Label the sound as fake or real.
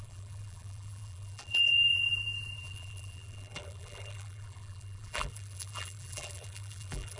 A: fake